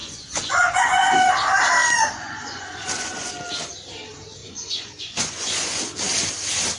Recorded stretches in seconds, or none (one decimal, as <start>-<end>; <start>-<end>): 1.3-1.8; 3.3-4.4; 5.8-6.8